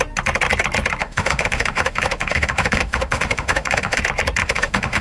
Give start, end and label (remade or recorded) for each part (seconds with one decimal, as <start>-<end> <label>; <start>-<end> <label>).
0.0-1.0 recorded; 1.0-4.0 remade; 4.0-4.4 recorded; 4.4-5.0 remade